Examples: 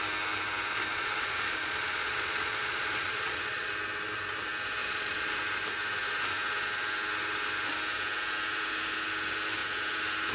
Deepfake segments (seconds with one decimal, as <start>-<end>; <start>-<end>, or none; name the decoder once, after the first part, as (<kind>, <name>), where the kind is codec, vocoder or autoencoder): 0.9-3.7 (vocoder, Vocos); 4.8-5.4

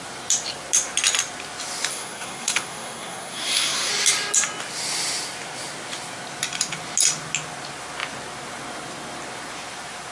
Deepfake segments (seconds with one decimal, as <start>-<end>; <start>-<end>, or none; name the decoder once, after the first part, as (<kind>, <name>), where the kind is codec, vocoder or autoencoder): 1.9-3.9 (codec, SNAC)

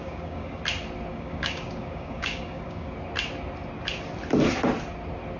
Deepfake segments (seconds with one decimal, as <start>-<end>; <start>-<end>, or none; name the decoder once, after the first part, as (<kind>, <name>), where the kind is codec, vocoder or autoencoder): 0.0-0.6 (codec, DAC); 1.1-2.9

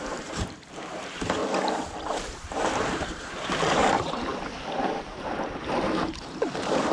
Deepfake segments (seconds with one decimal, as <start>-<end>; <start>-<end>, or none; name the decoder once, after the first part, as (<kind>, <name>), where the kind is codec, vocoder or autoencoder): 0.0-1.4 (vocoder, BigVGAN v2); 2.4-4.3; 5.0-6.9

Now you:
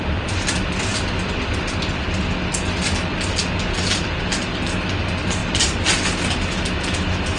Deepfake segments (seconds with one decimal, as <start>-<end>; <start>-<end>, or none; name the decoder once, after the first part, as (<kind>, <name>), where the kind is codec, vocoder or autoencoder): none

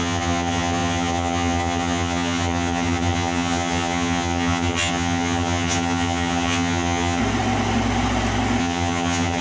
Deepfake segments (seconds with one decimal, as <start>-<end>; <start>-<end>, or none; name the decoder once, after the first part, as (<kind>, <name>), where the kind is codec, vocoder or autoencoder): 0.0-7.2 (vocoder, HiFi-GAN); 8.6-9.4

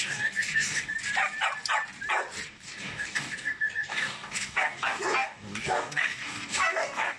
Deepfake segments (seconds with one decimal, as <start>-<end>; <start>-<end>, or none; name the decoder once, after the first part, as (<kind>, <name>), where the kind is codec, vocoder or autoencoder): 0.0-0.9 (codec, DAC); 2.5-7.2